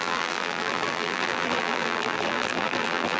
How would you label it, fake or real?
fake